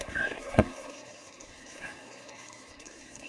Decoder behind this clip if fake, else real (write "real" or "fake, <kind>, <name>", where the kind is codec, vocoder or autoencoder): fake, codec, SNAC